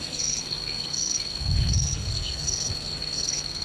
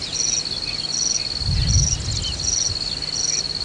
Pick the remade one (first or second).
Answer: first